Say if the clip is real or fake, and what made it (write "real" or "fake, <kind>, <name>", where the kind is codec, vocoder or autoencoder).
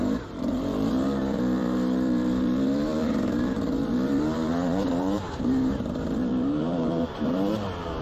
fake, vocoder, BigVGAN v2